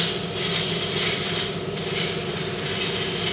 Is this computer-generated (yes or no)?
no